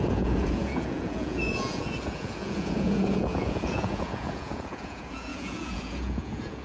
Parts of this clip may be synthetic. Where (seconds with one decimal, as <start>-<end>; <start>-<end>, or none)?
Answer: 0.0-6.6

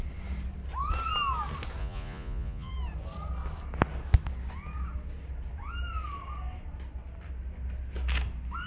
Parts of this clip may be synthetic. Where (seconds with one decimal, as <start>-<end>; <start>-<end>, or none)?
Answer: 1.8-2.7

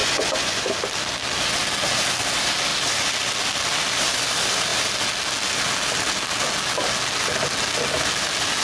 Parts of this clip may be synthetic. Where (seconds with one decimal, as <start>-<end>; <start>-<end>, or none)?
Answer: 0.0-0.7